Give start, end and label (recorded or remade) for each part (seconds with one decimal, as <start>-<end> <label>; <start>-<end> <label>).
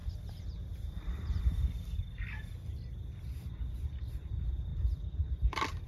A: 0.0-1.4 remade; 1.4-4.7 recorded; 4.7-5.9 remade